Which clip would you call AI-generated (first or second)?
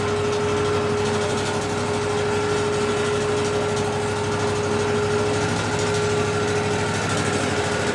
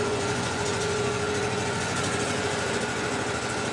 second